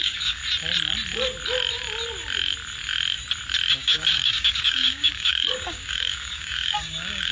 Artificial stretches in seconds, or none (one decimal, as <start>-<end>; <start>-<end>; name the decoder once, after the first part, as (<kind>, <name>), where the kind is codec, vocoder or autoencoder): 0.0-0.4 (codec, DAC); 3.7-7.3